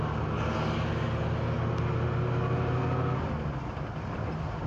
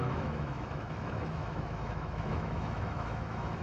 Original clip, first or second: first